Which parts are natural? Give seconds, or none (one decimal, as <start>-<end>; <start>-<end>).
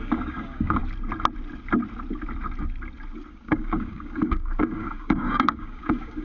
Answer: 0.8-3.3